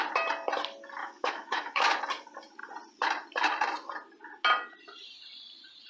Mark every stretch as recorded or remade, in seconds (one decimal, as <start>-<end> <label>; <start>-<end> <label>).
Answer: 0.0-1.0 recorded; 1.0-2.0 remade; 2.0-5.9 recorded